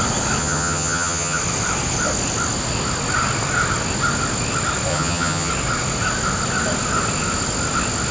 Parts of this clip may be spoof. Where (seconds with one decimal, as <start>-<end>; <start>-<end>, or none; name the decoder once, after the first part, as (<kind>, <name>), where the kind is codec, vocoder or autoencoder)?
0.4-1.4 (vocoder, HiFi-GAN); 4.9-5.5